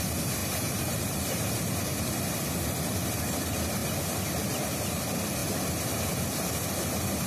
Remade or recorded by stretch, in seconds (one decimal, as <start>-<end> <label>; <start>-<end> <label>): 0.0-0.4 recorded; 0.4-2.1 remade; 2.1-7.3 recorded